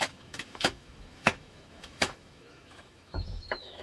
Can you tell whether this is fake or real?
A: fake